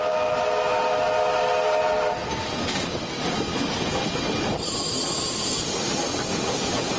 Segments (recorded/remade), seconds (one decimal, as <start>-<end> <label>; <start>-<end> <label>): 0.0-7.0 recorded

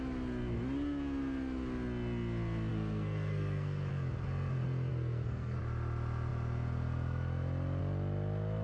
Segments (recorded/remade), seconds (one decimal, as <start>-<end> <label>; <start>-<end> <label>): 0.0-2.7 recorded; 2.7-3.9 remade; 3.9-4.9 recorded; 4.9-5.6 remade; 5.6-8.6 recorded

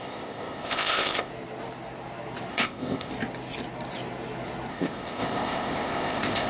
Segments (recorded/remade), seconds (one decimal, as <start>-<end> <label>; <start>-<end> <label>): 0.0-1.3 remade; 1.3-2.5 recorded; 2.5-3.1 remade; 3.1-4.7 recorded; 4.7-6.5 remade

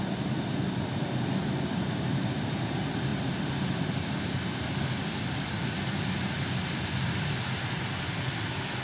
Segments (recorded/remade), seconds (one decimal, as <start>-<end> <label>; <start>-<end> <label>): 0.0-8.8 recorded

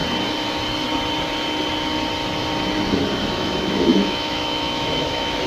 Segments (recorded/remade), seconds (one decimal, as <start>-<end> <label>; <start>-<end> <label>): 0.0-3.3 recorded; 3.3-5.5 remade

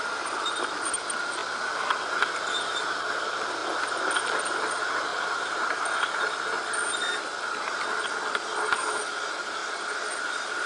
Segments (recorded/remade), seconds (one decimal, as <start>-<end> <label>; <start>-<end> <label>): 0.0-10.7 recorded

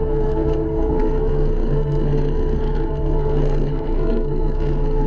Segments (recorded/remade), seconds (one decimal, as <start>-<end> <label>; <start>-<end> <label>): 0.0-5.1 remade